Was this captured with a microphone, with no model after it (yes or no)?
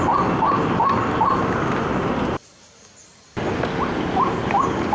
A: yes